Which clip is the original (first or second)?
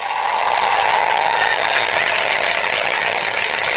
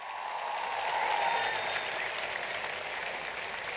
second